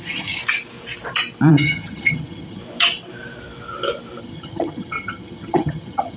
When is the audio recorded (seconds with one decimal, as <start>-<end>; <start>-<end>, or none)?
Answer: 0.4-1.5; 2.6-4.2